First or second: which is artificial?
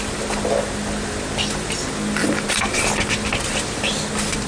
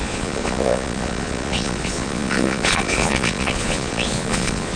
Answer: second